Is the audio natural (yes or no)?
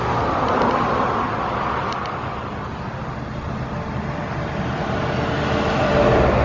yes